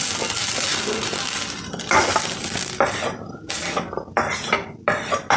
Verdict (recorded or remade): recorded